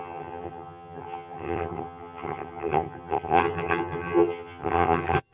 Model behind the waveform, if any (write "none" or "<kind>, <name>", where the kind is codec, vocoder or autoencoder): vocoder, HiFi-GAN